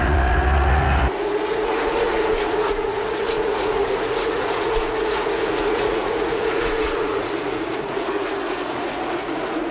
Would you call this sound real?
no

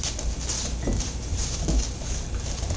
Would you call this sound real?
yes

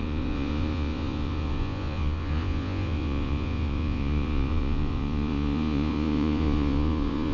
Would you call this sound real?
no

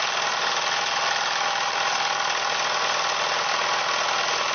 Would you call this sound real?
yes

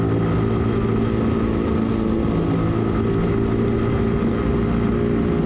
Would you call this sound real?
yes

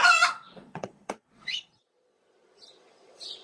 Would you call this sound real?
no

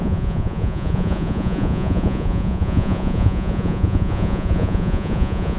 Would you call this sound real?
no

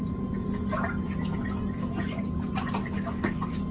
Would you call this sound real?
yes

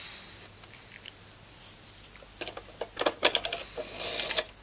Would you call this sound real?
yes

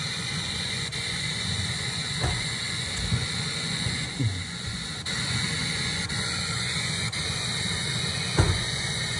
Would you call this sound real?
no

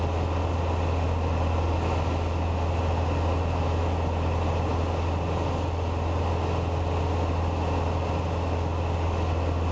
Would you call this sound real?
yes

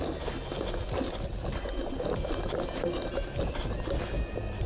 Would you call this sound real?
yes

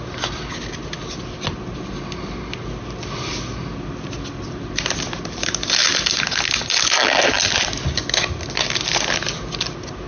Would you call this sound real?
yes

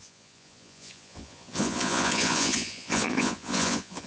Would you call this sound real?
no